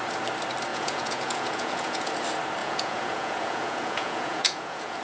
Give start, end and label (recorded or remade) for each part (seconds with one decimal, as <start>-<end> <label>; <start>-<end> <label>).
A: 0.0-0.7 recorded; 0.7-2.1 remade; 2.1-2.6 recorded; 2.6-5.0 remade